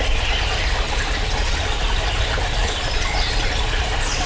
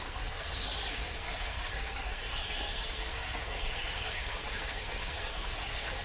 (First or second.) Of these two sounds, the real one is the first